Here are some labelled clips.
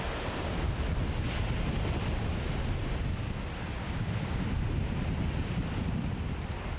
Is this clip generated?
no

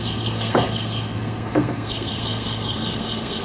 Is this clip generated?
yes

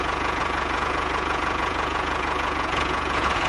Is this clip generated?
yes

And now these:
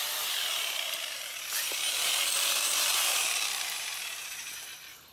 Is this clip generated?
yes